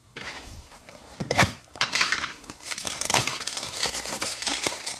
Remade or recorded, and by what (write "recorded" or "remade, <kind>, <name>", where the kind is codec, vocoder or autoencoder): remade, codec, SNAC